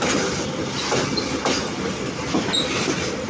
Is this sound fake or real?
real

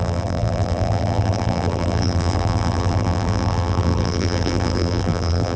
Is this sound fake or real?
fake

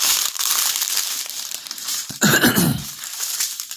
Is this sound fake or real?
fake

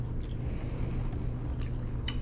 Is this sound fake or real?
real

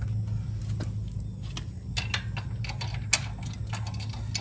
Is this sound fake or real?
real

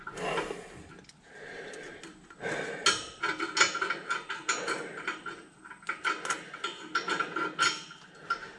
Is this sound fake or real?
real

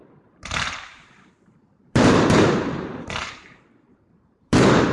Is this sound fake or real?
fake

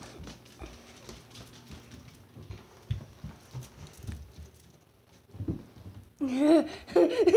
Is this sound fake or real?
real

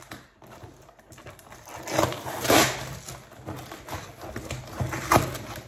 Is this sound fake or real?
real